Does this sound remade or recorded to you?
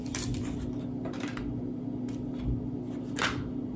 recorded